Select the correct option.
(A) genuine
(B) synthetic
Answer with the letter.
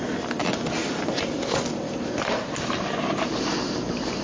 A